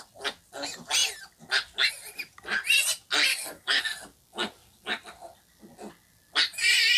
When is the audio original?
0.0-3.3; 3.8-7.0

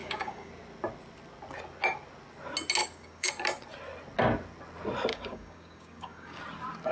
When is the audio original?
0.5-2.8; 3.3-5.1; 6.4-6.9

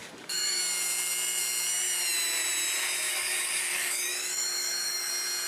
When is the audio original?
0.6-3.1; 5.1-5.5

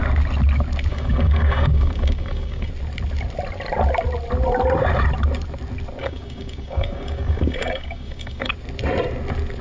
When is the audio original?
0.0-0.9; 2.7-6.0; 8.5-9.6

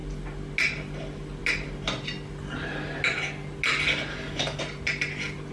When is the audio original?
0.0-4.1; 4.6-5.5

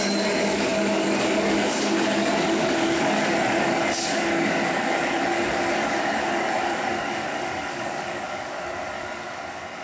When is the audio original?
none